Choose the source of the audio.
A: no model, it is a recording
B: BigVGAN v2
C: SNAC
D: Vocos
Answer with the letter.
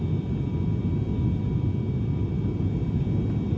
A